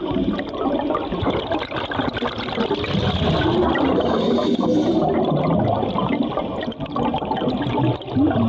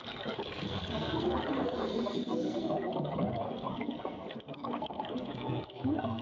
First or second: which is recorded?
first